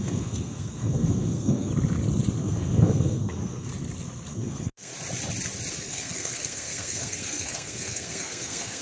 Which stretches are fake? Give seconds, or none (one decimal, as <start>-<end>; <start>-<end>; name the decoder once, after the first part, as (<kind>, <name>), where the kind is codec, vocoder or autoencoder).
0.0-1.7 (codec, SNAC); 2.4-3.7; 4.3-4.9; 5.7-8.8